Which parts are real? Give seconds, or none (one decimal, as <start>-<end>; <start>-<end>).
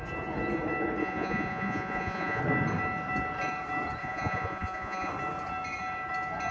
0.0-1.0; 2.4-4.0; 5.1-6.5